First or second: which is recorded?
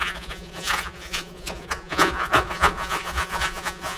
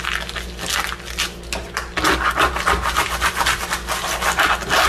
second